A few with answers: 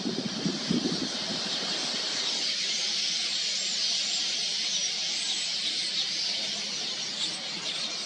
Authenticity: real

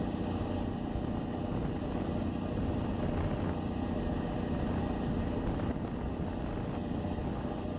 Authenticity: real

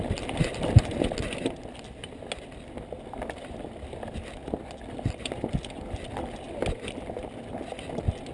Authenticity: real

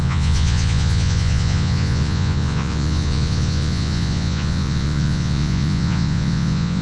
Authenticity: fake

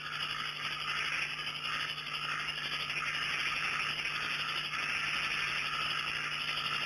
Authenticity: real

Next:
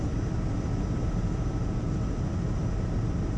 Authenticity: fake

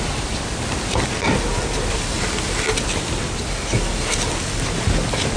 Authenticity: fake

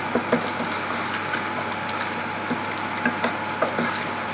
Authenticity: real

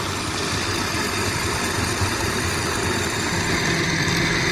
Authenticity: fake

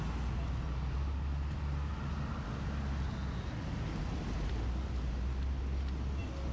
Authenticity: real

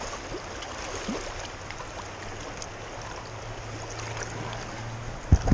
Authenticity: real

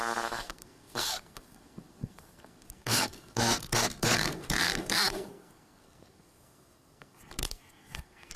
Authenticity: fake